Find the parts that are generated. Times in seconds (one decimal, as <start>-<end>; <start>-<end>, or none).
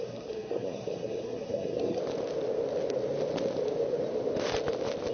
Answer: 0.0-2.0